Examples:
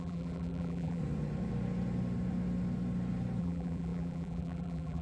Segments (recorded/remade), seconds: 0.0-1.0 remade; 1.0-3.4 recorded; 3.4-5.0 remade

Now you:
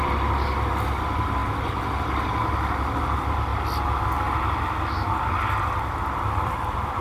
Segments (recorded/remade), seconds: 0.0-3.5 remade; 3.5-6.0 recorded; 6.0-7.0 remade